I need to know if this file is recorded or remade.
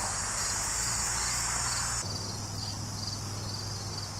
recorded